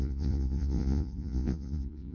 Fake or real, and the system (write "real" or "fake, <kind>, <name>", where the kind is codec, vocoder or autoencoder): fake, vocoder, Vocos